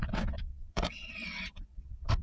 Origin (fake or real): fake